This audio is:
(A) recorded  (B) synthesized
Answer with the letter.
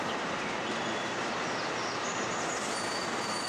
A